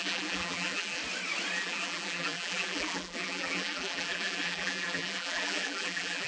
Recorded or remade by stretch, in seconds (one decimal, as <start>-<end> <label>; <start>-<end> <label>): 0.0-1.0 remade; 1.0-1.5 recorded; 1.5-6.3 remade